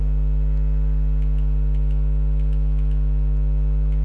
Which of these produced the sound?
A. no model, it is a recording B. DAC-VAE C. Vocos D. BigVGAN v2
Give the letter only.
A